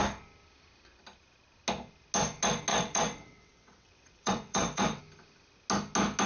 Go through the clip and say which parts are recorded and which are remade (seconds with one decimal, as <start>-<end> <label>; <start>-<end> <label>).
0.0-2.7 recorded; 2.7-5.0 remade; 5.0-6.3 recorded